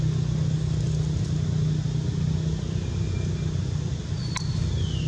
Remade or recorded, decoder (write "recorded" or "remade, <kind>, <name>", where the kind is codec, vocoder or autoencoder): recorded